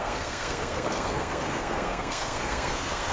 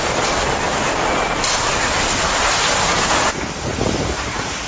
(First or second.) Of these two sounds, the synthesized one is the first